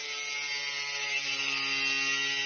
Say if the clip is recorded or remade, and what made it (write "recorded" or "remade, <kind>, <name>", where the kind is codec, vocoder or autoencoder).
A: recorded